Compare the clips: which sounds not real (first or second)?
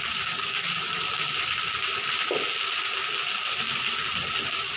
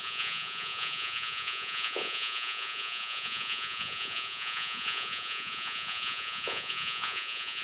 second